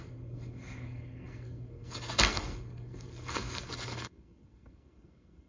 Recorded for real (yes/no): no